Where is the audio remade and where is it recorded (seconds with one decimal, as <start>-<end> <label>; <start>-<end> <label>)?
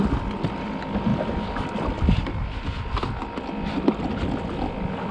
0.0-5.1 recorded